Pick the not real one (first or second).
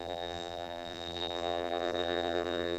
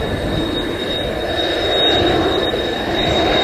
first